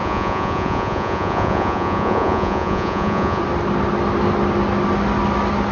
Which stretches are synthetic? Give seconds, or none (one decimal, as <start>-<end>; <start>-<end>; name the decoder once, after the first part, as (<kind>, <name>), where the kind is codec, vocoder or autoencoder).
0.0-3.4 (vocoder, Vocos)